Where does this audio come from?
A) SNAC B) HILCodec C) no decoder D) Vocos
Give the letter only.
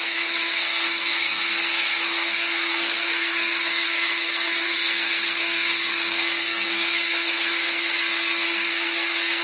A